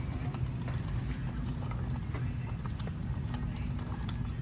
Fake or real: real